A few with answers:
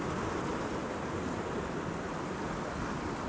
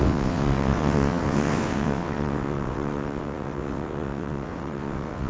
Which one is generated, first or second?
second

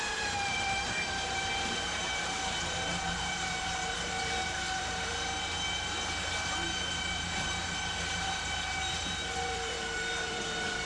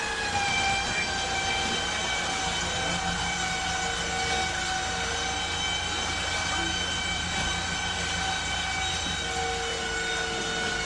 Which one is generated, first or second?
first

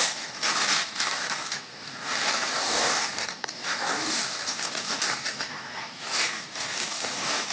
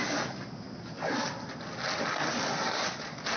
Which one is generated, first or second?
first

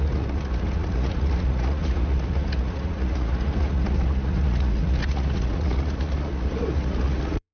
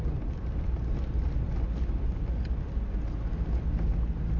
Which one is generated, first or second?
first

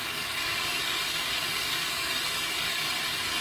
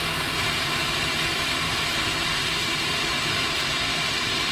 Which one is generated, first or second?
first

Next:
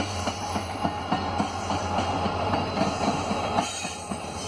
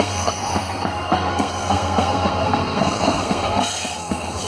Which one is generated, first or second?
second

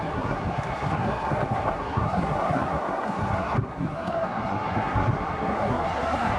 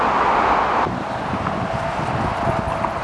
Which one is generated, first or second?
first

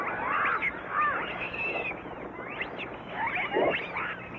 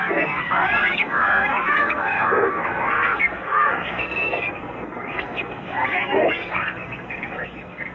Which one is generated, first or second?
second